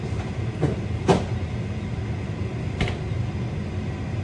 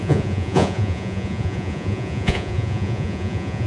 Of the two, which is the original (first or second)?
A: first